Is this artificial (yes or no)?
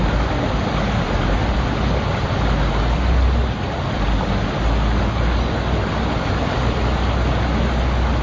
no